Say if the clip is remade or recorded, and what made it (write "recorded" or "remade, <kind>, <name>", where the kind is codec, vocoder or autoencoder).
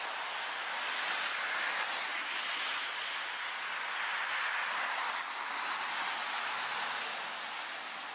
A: recorded